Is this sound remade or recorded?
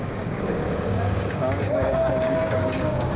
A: remade